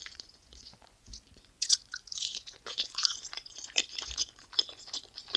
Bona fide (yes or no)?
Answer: no